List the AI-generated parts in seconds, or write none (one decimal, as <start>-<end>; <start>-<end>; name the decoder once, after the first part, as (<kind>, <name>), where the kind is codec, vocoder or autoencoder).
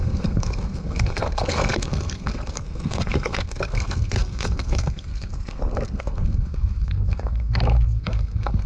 0.0-8.7 (codec, SNAC)